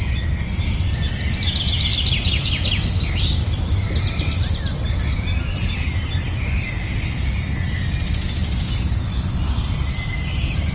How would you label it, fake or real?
real